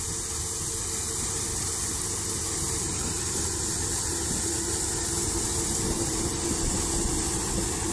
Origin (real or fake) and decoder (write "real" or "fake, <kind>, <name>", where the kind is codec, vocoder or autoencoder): real